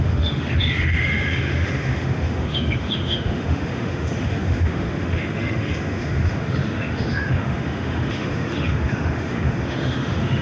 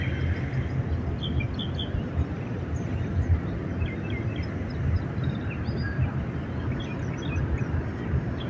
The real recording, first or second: second